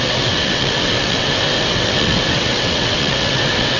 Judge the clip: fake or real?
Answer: fake